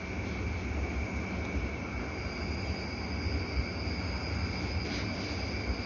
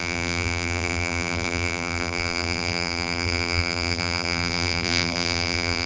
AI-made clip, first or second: second